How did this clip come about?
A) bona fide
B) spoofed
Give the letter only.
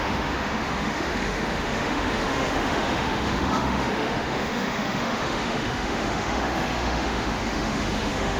B